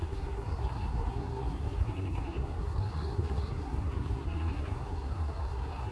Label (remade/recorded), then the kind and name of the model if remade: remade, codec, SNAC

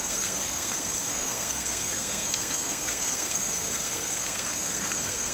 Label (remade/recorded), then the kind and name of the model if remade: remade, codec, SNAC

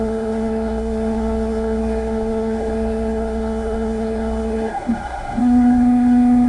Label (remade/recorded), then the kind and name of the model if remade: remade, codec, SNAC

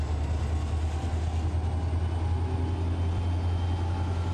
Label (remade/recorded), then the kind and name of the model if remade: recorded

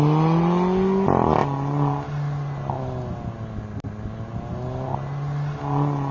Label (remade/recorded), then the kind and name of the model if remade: recorded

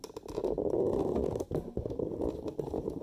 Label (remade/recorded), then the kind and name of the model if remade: recorded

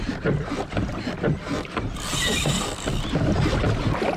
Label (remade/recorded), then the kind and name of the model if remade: recorded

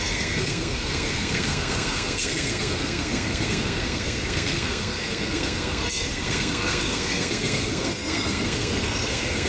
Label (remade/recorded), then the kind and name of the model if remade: remade, codec, SNAC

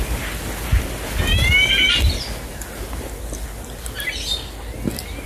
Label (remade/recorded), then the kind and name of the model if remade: recorded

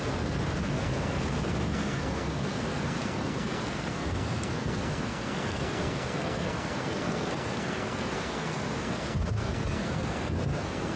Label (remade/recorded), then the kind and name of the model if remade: remade, codec, SNAC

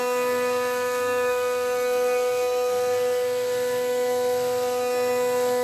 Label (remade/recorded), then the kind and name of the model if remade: remade, codec, SNAC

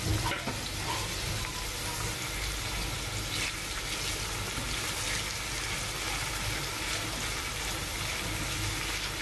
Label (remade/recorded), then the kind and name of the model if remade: recorded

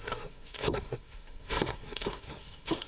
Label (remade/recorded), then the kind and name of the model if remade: remade, codec, SNAC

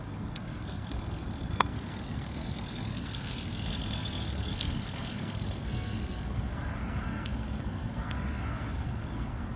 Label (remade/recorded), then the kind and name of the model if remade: remade, codec, SNAC